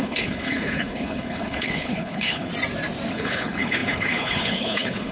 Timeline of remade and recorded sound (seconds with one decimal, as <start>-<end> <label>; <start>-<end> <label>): 0.0-2.5 remade; 2.5-3.1 recorded; 3.1-5.1 remade